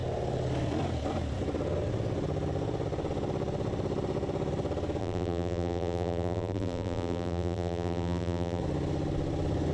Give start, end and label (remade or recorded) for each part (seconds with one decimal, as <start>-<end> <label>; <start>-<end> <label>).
0.0-5.0 recorded; 5.0-8.6 remade; 8.6-9.7 recorded